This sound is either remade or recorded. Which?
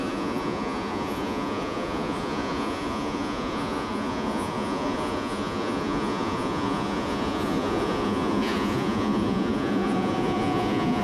remade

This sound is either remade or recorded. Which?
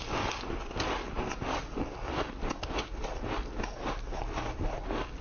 recorded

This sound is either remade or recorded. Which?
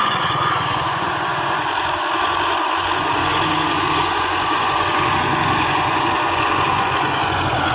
remade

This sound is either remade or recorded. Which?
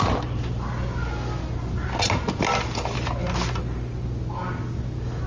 recorded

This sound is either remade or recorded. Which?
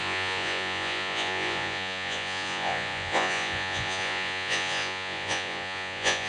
remade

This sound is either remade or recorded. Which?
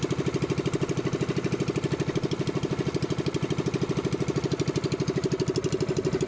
recorded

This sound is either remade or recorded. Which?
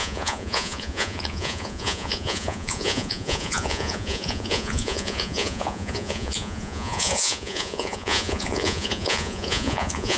remade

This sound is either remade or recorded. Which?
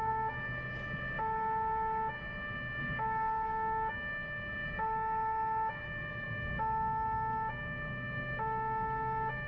recorded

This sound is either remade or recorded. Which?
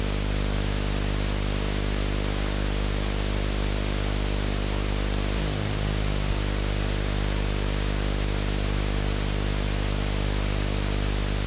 recorded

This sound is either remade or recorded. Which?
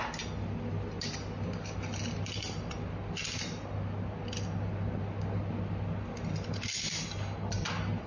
recorded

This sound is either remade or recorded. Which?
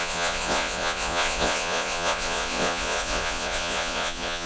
remade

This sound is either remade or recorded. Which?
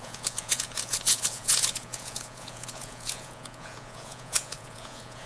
remade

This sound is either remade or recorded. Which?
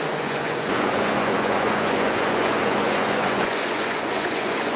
remade